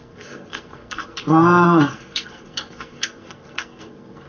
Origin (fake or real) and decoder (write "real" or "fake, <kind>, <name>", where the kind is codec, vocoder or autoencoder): fake, codec, SNAC